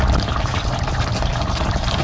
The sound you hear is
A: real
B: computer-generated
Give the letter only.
A